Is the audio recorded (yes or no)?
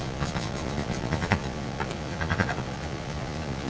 no